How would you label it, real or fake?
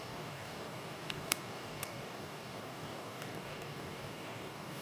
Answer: fake